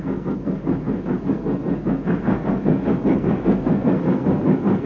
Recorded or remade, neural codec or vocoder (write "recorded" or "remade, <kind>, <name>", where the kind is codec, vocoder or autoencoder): remade, codec, SNAC